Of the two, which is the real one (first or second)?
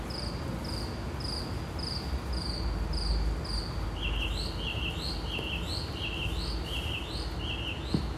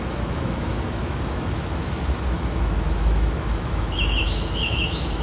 first